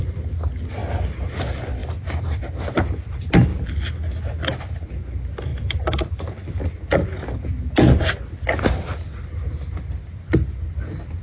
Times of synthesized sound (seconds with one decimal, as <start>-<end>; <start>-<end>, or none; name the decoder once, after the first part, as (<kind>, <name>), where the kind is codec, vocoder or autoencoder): 1.8-2.4 (vocoder, BigVGAN v2); 5.5-6.3